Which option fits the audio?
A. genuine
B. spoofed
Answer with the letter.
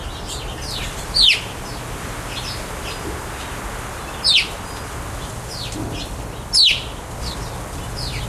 A